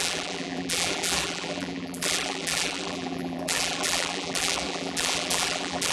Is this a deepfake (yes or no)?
yes